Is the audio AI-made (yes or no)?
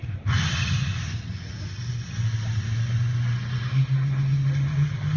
no